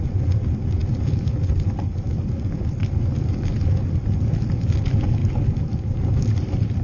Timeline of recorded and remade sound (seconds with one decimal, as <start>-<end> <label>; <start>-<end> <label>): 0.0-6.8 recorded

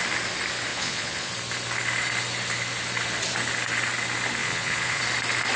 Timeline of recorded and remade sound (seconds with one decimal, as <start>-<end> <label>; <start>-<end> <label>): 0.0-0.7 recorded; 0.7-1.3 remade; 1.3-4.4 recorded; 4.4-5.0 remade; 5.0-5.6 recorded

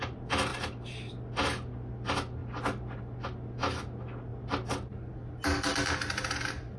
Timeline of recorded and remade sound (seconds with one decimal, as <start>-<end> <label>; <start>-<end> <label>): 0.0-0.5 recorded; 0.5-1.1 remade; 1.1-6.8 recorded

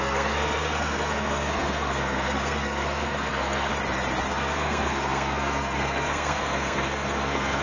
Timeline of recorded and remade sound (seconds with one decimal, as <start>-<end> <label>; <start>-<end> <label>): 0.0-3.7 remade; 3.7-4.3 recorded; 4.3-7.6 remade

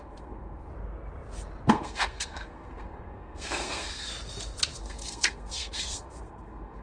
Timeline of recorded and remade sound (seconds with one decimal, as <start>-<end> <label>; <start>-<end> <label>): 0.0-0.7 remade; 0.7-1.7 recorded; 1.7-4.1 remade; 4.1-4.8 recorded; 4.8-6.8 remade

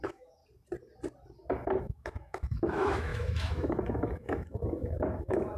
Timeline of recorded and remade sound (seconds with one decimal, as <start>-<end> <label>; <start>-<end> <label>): 0.0-0.4 remade; 0.4-1.8 recorded; 1.8-5.6 remade